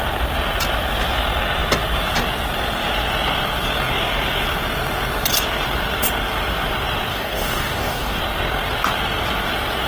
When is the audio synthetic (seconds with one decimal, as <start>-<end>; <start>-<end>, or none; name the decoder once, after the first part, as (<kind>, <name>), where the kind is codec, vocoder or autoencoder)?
7.1-8.2 (codec, DAC)